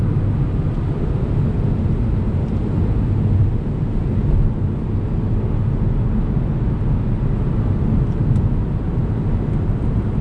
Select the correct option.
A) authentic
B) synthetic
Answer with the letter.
A